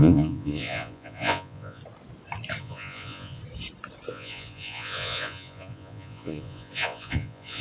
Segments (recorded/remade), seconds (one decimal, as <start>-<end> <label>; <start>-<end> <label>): 0.0-1.8 remade; 1.8-2.6 recorded; 2.6-3.4 remade; 3.4-4.1 recorded; 4.1-7.6 remade